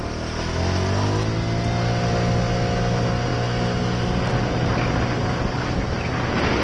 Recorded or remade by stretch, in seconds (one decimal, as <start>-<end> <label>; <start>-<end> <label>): 0.0-6.6 recorded